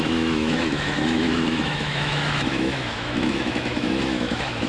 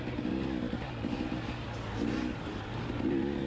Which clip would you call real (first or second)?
second